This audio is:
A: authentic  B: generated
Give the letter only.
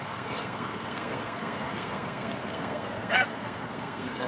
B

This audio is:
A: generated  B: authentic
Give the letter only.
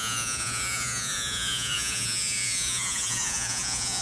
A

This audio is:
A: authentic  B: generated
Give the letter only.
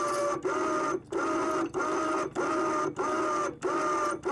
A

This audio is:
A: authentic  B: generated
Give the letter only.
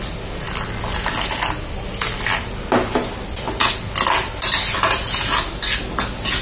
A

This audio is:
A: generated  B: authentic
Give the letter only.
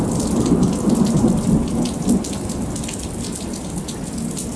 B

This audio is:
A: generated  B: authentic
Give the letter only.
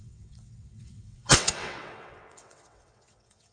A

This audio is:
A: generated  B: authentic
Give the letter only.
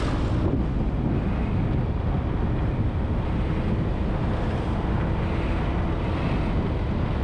B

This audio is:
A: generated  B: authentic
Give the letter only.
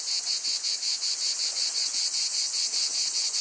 A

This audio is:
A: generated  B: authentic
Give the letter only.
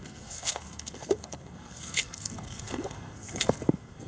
A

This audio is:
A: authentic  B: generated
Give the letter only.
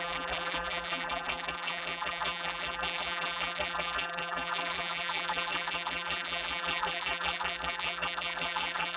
B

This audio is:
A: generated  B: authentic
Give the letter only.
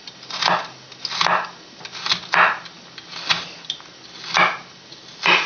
B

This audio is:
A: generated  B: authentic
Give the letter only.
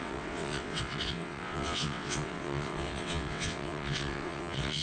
A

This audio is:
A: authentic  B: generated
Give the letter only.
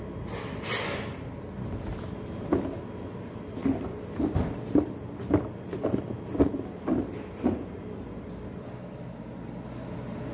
A